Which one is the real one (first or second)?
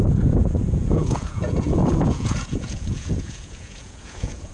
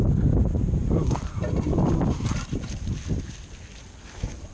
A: second